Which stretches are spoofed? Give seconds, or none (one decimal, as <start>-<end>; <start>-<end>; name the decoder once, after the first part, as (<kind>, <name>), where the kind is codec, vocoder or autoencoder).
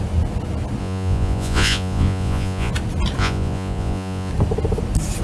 0.8-2.7 (vocoder, Vocos); 3.2-4.3